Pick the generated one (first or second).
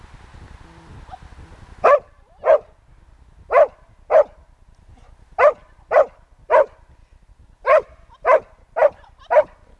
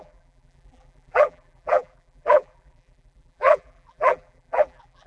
second